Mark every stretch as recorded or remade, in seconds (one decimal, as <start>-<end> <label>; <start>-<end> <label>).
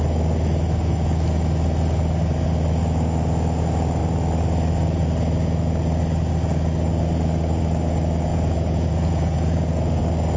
0.0-8.3 recorded; 8.3-10.0 remade; 10.0-10.4 recorded